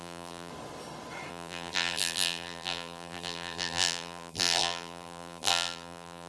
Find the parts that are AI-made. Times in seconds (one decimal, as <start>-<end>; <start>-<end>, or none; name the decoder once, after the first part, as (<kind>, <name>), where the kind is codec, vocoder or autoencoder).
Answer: 0.0-0.5 (vocoder, BigVGAN v2); 1.3-6.3